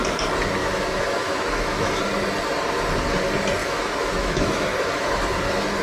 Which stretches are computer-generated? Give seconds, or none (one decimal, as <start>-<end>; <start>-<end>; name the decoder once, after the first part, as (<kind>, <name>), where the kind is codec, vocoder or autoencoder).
0.6-2.0 (autoencoder, DAC-VAE); 3.6-5.2